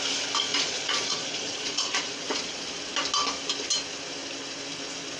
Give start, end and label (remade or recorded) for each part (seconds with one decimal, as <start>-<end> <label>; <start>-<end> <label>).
0.0-0.5 recorded; 0.5-2.7 remade; 2.7-5.2 recorded